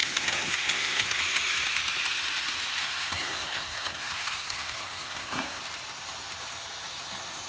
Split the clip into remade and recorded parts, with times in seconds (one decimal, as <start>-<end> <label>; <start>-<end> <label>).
0.0-1.2 remade; 1.2-2.8 recorded; 2.8-5.6 remade; 5.6-7.5 recorded

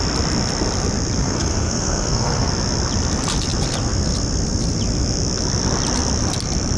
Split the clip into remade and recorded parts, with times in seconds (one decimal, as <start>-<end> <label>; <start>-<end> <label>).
0.0-1.2 recorded; 1.2-2.5 remade; 2.5-6.8 recorded